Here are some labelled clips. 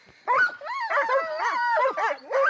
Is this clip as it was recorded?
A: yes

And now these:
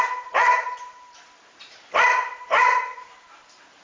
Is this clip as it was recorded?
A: no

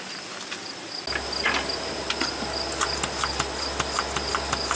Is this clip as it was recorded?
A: yes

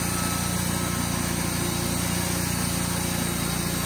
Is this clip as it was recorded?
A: yes